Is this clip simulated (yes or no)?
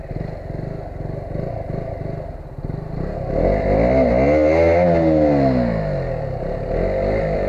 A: no